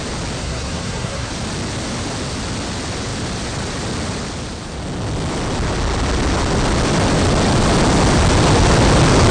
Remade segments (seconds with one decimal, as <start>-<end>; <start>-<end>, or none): 0.4-1.3

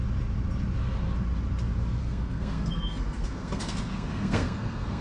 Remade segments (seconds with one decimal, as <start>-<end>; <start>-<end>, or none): 2.0-5.0

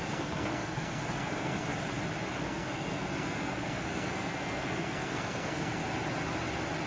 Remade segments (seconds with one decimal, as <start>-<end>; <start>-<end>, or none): 0.0-1.7; 2.4-5.8

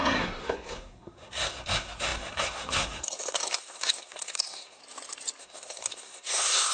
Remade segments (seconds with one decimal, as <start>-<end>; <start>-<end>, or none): 0.0-4.8; 5.4-6.7

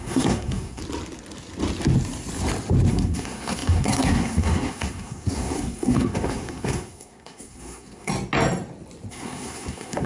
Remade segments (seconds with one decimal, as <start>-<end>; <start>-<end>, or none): 0.0-0.8; 2.9-8.1; 9.1-10.1